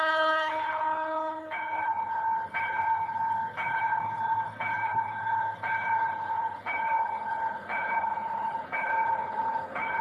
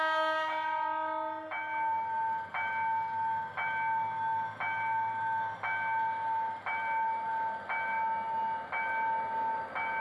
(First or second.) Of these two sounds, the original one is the second